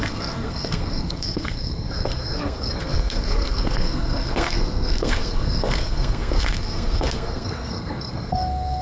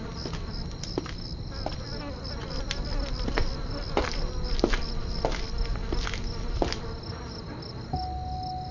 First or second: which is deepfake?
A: first